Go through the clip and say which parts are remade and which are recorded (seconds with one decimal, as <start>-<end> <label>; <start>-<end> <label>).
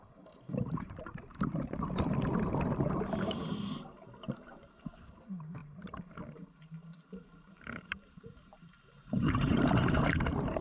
0.0-1.3 remade; 1.3-2.8 recorded; 2.8-10.6 remade